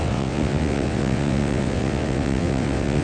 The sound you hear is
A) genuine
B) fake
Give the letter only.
B